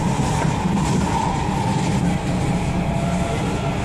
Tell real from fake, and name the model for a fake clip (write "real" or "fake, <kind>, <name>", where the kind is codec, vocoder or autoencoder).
real